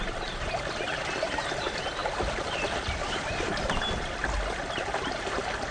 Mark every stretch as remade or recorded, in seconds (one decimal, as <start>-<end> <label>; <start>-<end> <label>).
0.0-5.7 recorded